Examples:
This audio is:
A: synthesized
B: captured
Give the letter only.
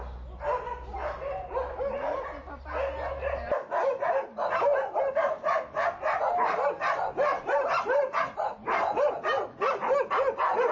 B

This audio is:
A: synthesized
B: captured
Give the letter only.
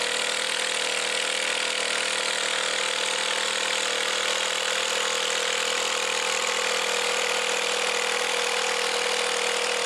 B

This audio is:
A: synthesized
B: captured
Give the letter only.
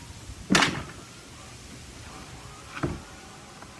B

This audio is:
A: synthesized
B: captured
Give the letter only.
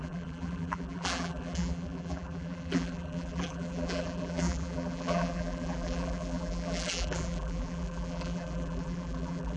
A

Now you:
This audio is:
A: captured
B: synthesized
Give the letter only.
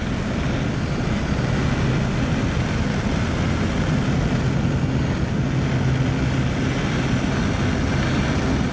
A